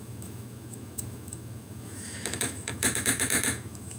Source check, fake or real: fake